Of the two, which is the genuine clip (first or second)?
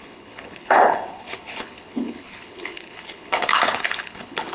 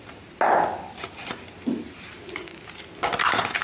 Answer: second